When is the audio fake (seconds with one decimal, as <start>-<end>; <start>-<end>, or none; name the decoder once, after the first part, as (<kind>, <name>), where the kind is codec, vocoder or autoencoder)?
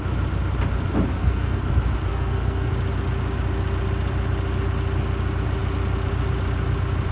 1.1-1.6 (codec, SNAC); 2.1-2.7